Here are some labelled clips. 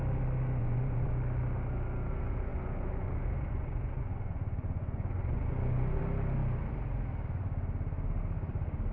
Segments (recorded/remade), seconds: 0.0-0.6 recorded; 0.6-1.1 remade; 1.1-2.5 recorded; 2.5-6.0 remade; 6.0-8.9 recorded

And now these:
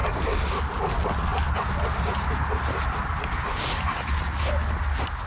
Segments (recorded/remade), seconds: 0.0-5.3 recorded

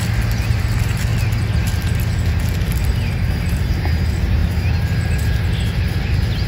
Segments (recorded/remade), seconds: 0.0-6.5 recorded

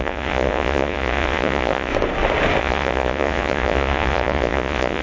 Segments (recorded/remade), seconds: 0.0-1.9 remade; 1.9-2.6 recorded; 2.6-5.0 remade

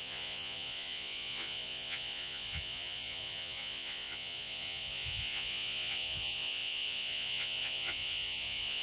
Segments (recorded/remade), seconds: 0.0-8.8 remade